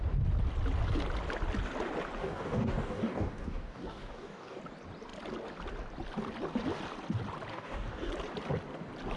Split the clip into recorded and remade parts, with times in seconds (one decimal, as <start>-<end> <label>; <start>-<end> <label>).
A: 0.0-2.2 recorded; 2.2-4.6 remade; 4.6-7.5 recorded; 7.5-8.1 remade; 8.1-9.2 recorded